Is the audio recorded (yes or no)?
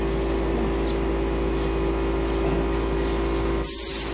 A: yes